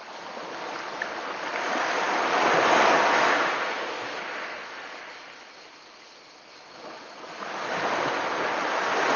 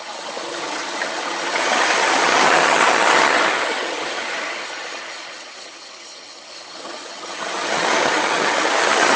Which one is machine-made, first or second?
second